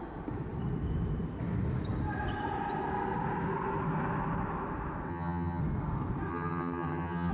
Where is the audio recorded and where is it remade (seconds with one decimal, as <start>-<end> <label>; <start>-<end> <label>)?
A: 0.0-5.1 recorded; 5.1-5.6 remade; 5.6-6.3 recorded; 6.3-7.3 remade